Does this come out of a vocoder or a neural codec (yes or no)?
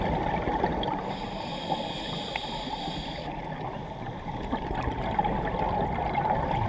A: no